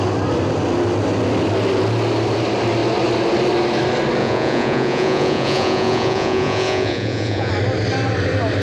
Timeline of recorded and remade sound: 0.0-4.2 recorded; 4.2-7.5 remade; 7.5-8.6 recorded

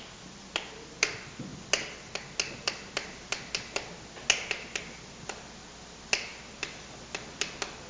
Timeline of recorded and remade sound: 0.0-7.9 recorded

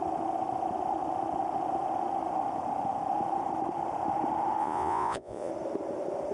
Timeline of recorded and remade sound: 0.0-4.6 recorded; 4.6-5.5 remade; 5.5-6.3 recorded

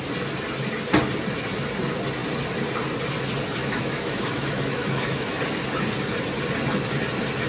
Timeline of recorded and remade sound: 0.0-3.6 recorded; 3.6-5.3 remade; 5.3-7.5 recorded